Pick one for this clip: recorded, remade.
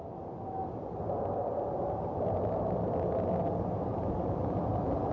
recorded